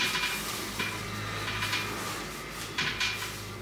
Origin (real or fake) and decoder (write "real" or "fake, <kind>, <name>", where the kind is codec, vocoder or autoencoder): real